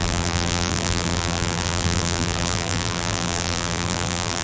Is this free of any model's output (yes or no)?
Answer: no